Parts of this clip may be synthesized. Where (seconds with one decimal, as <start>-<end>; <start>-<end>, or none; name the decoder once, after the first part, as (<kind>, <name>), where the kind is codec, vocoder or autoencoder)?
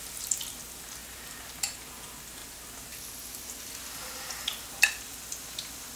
1.0-1.6 (vocoder, BigVGAN v2); 2.4-3.0